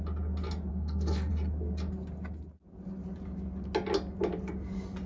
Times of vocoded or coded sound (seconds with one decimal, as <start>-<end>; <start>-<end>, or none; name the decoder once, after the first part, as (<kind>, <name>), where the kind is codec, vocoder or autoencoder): 0.7-1.3 (codec, SNAC)

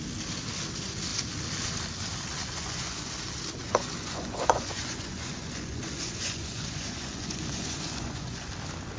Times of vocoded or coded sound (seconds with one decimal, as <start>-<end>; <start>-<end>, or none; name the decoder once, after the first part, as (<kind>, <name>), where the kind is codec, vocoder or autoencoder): 2.4-3.1 (vocoder, Vocos); 3.6-8.5

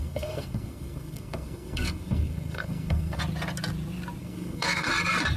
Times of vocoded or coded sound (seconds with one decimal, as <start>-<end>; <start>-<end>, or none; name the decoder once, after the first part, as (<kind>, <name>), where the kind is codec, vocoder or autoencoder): 0.0-3.2 (codec, SNAC); 4.2-4.9